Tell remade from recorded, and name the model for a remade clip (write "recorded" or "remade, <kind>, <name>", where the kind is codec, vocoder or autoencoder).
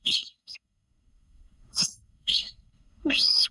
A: remade, codec, SNAC